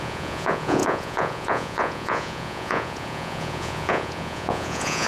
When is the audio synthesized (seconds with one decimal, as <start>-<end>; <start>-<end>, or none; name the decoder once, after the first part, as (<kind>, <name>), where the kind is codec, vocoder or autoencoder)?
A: 0.0-5.1 (vocoder, Vocos)